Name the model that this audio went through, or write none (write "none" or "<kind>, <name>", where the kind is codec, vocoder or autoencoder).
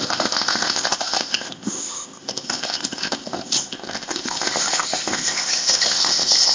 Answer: codec, ZipCodec